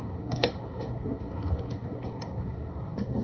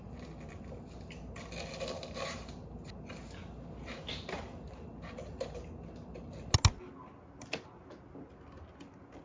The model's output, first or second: first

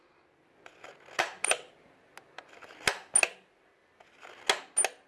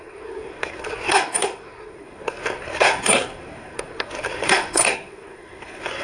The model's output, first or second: second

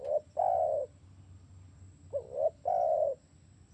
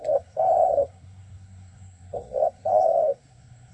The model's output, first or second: second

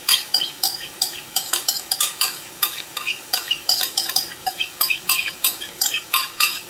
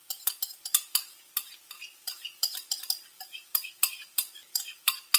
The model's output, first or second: first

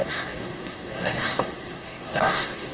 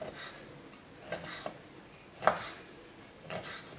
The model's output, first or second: first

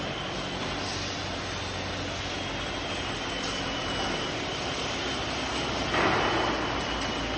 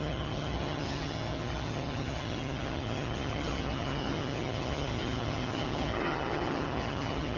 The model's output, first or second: second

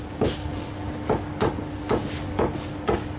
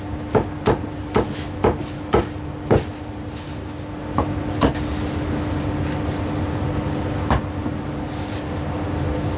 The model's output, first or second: first